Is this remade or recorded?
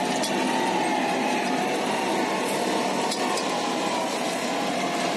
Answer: recorded